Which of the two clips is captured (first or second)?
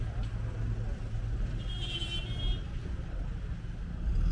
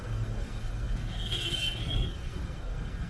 first